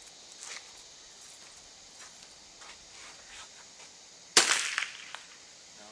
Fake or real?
real